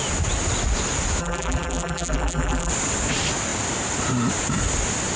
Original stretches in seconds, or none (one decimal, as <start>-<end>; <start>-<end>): 0.0-1.2; 2.7-5.2